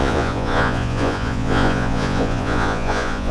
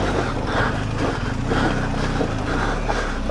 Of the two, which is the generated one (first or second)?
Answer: first